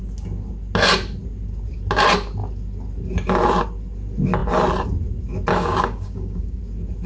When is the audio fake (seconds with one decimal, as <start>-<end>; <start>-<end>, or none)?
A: 5.5-6.6